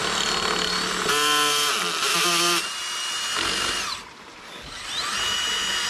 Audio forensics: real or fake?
real